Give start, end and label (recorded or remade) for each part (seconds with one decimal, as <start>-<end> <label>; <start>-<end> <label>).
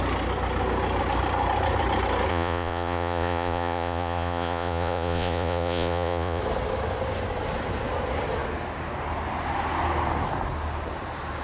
0.0-2.3 recorded; 2.3-6.4 remade; 6.4-11.4 recorded